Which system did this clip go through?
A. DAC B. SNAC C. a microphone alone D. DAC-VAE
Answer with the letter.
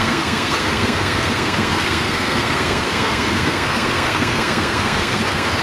B